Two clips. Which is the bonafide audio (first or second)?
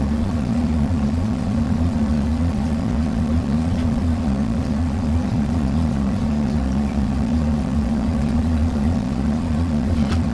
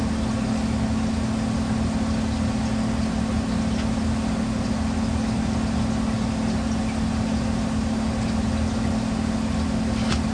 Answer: second